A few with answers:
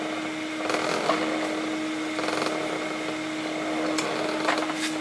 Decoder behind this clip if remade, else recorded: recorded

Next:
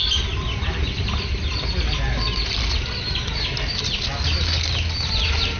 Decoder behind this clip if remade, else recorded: recorded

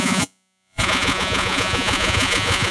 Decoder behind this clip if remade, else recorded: remade, vocoder, Vocos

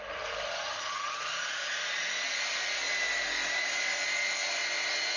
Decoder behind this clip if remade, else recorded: recorded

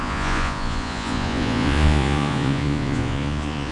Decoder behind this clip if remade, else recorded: remade, vocoder, Vocos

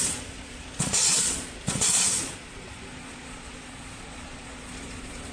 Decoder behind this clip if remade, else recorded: remade, vocoder, Vocos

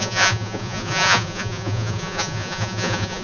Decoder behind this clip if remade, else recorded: remade, vocoder, Vocos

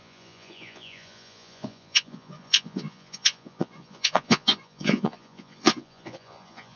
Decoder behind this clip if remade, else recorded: remade, vocoder, Vocos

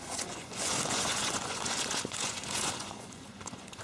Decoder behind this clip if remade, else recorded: remade, vocoder, Vocos